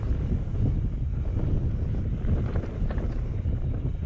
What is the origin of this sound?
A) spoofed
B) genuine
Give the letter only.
B